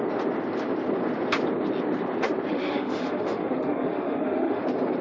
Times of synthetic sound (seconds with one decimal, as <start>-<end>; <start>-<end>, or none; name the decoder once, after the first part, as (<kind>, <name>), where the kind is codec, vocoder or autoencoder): 2.5-4.6 (autoencoder, DAC-VAE)